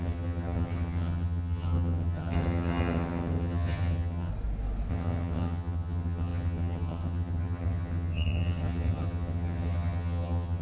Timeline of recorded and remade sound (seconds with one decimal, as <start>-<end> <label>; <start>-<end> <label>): 0.0-4.3 remade; 4.3-4.9 recorded; 4.9-10.6 remade